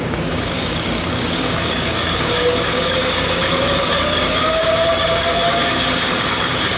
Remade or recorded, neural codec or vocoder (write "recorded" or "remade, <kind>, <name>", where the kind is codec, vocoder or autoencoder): remade, codec, DAC